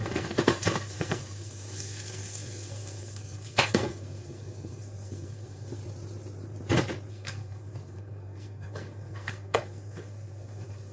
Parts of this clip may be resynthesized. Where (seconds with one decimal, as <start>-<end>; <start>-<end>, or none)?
0.0-5.8; 7.1-10.9